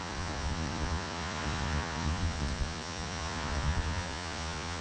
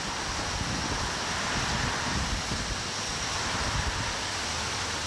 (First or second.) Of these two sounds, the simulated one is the first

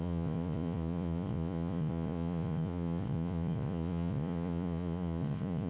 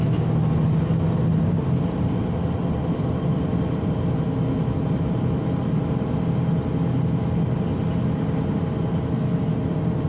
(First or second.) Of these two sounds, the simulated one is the first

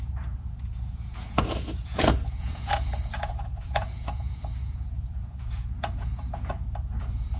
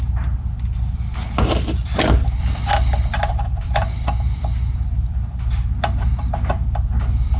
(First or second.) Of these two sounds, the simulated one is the first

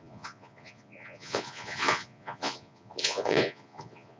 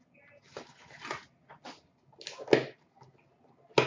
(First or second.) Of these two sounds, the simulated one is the first